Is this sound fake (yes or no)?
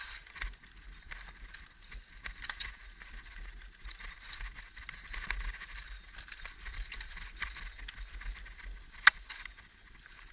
no